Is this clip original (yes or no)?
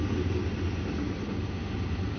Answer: yes